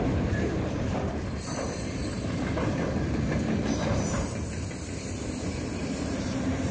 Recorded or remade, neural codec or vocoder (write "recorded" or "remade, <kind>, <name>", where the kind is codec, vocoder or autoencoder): remade, vocoder, BigVGAN v2